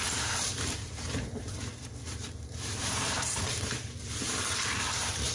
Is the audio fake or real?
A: fake